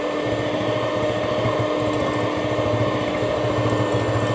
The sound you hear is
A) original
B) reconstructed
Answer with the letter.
A